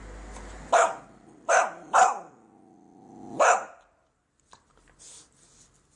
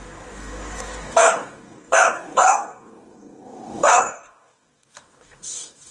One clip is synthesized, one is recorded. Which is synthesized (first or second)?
second